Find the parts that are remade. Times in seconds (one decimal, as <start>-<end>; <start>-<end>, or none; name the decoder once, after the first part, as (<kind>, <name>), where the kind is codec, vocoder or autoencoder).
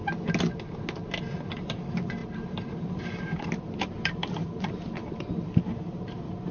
1.5-6.5 (vocoder, BigVGAN v2)